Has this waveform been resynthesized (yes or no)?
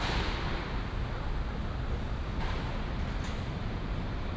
no